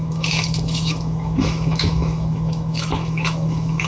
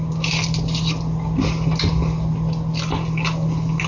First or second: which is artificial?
first